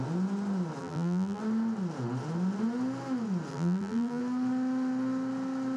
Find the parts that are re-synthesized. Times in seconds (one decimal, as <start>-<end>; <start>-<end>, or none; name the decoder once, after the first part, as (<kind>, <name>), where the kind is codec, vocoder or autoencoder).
0.8-1.4 (vocoder, BigVGAN v2); 3.5-4.2